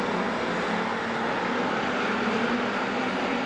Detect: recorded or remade recorded